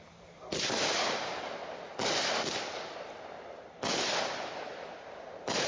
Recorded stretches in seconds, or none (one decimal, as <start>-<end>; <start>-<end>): 1.6-4.2